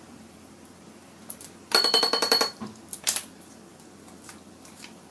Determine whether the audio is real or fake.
fake